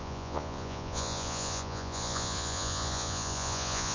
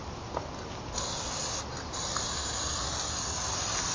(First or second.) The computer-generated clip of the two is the first